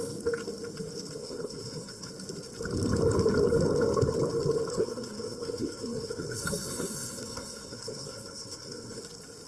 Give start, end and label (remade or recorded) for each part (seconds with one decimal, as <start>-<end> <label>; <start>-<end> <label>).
0.0-1.2 recorded; 1.2-2.1 remade; 2.1-4.7 recorded; 4.7-9.0 remade; 9.0-9.5 recorded